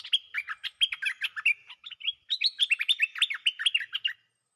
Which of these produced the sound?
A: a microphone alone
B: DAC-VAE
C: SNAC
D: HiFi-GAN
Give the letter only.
A